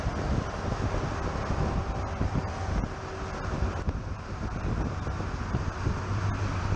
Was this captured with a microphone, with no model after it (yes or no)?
yes